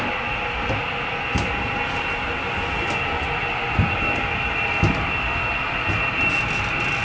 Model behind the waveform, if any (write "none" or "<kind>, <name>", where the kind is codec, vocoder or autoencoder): none